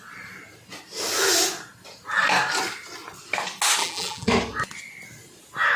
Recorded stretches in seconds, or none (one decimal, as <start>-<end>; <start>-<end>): 0.0-3.8; 4.3-5.8